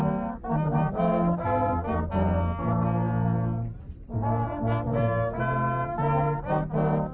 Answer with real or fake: real